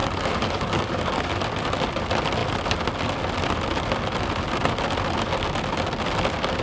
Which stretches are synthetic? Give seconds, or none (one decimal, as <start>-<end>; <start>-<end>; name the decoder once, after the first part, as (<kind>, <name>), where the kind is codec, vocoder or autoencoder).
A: 0.0-1.3 (codec, DAC)